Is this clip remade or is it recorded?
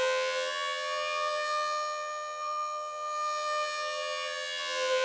remade